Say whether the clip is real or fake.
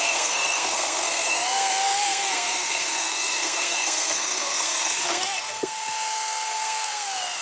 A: fake